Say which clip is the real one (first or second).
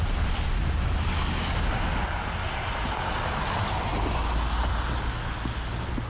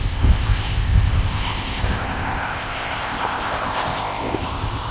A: first